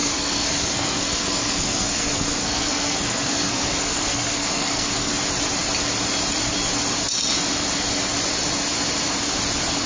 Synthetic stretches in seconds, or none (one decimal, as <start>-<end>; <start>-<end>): 0.0-5.1